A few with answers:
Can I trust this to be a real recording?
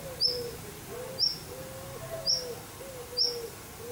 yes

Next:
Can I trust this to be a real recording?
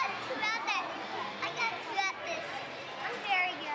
yes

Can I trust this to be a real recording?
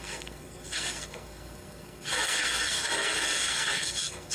no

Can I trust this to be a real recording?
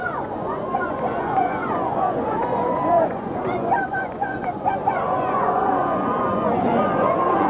no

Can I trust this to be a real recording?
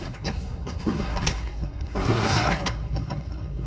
no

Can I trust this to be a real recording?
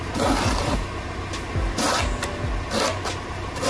yes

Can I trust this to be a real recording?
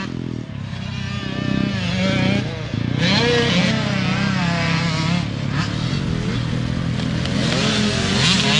yes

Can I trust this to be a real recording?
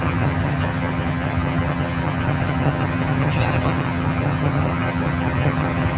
no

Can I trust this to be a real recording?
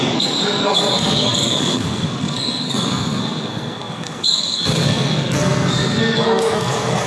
no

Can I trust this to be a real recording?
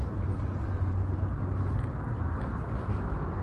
yes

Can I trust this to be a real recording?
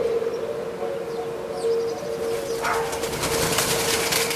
yes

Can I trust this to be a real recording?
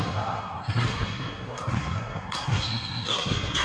no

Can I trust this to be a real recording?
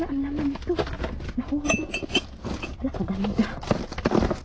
yes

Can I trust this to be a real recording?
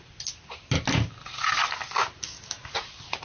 yes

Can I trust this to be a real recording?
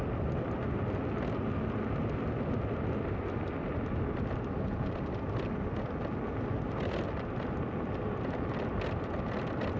yes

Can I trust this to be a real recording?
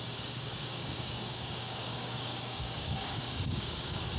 no